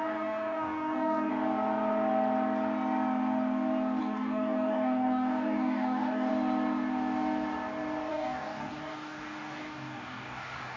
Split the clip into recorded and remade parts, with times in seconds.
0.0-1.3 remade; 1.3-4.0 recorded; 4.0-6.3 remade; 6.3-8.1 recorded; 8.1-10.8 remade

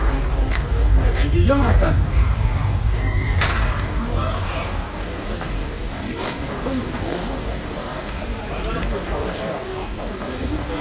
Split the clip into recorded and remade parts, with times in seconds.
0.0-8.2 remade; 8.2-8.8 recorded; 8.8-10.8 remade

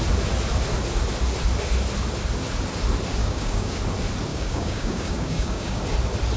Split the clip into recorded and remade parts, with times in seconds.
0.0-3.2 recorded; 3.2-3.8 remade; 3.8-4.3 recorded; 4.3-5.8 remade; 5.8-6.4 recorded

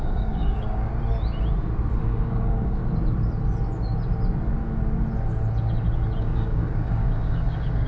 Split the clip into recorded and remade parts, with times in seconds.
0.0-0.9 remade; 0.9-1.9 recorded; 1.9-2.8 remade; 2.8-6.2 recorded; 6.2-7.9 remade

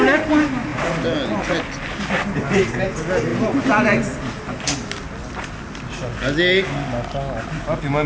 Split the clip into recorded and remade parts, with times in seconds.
0.0-8.1 recorded

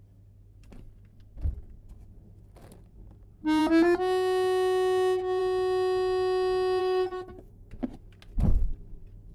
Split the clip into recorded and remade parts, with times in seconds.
0.0-6.8 recorded; 6.8-7.7 remade; 7.7-9.3 recorded

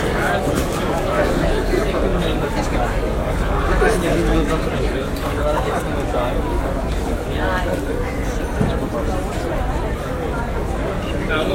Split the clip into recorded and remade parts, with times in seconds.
0.0-8.2 remade; 8.2-10.0 recorded; 10.0-11.5 remade

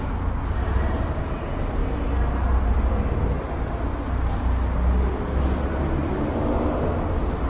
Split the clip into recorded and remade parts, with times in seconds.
0.0-7.5 recorded